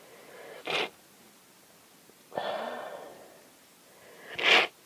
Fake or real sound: real